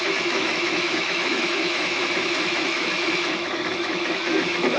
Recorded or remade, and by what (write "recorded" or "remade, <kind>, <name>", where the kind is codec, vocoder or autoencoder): remade, autoencoder, DAC-VAE